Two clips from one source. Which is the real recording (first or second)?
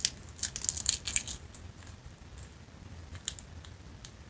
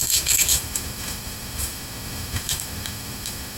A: first